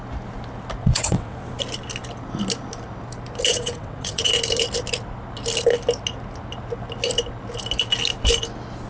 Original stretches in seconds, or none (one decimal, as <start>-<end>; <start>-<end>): 0.0-0.8; 1.6-3.5; 4.3-8.9